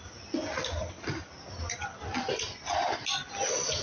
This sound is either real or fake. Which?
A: real